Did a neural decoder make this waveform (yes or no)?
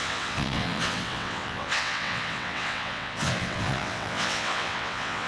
yes